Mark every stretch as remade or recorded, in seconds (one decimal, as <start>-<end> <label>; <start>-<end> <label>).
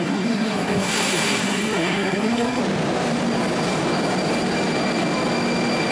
0.0-2.6 remade; 2.6-5.9 recorded